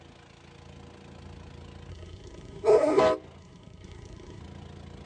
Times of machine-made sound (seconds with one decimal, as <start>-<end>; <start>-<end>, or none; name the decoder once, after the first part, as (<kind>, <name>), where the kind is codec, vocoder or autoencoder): 1.9-3.0 (codec, SNAC); 3.4-4.4